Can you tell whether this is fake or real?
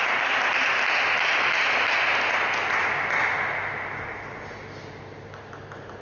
real